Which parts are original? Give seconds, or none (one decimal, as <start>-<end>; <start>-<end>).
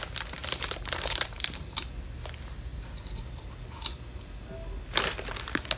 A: 0.0-0.4; 1.8-2.7; 3.6-5.8